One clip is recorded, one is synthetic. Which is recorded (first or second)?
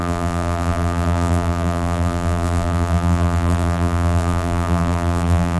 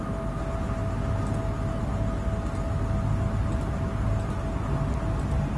second